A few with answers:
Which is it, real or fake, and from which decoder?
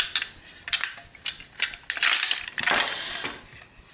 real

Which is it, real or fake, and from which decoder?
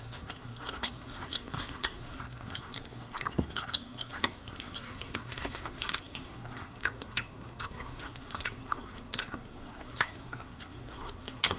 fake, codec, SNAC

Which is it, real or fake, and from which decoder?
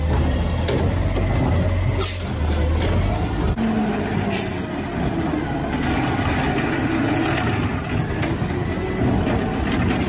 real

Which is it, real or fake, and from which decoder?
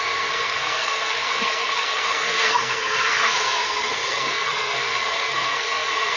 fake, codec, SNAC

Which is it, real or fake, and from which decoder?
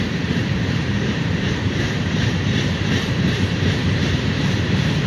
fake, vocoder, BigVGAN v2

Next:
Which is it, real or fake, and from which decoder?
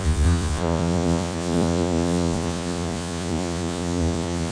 fake, vocoder, Vocos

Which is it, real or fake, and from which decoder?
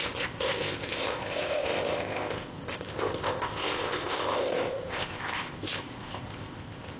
fake, codec, ZipCodec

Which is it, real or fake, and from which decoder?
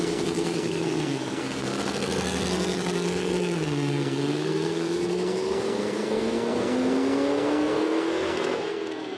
fake, codec, SNAC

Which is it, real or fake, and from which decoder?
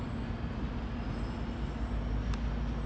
real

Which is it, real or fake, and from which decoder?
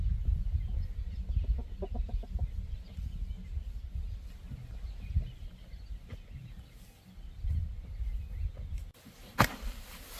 real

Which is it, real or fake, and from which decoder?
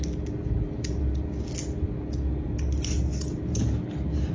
real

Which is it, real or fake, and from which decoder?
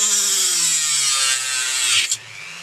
real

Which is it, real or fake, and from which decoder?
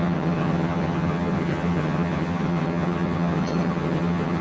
fake, vocoder, HiFi-GAN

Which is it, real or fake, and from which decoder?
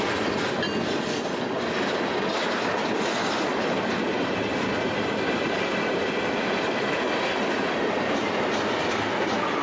real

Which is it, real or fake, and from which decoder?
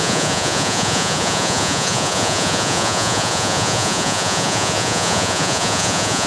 fake, vocoder, Vocos